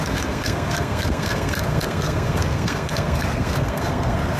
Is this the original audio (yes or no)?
no